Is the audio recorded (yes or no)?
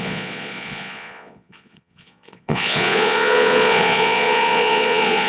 no